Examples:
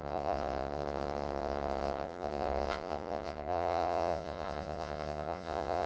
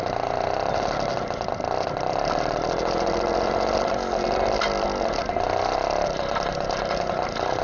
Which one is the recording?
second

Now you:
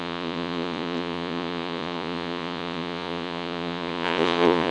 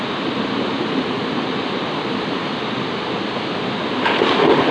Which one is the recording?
second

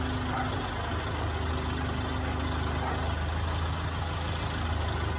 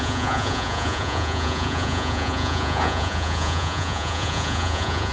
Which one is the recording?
first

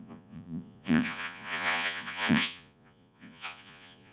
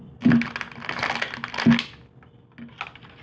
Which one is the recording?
second